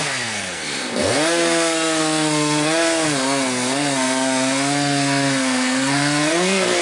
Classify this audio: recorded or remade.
remade